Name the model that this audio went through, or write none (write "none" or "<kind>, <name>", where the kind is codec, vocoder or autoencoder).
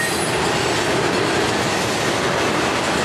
none